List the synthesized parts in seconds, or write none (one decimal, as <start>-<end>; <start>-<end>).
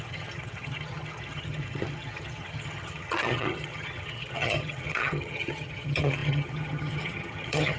0.0-7.8